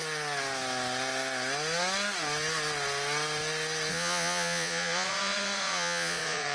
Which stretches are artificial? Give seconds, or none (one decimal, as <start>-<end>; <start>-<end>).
3.9-6.5